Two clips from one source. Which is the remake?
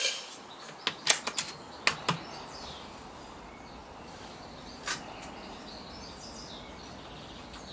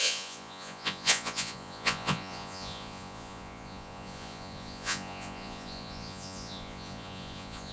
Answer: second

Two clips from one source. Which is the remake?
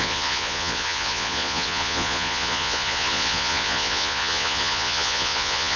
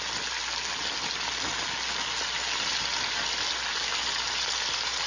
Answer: first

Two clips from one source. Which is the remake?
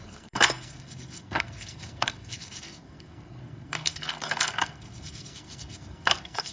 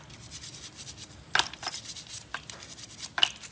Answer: first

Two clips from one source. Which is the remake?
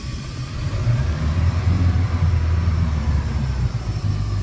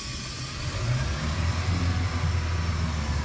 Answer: first